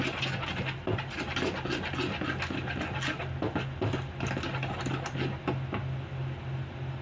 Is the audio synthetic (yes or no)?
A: no